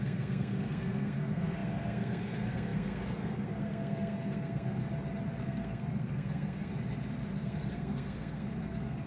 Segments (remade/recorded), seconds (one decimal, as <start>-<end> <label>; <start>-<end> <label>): 0.0-4.8 remade; 4.8-5.4 recorded; 5.4-6.7 remade; 6.7-7.4 recorded; 7.4-9.1 remade